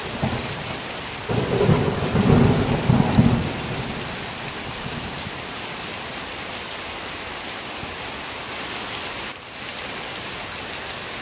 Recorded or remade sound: recorded